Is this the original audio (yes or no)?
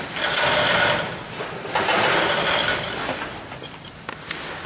yes